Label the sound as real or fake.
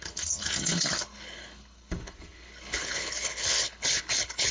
fake